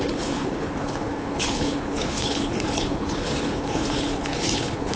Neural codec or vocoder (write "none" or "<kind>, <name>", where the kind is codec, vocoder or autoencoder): codec, HILCodec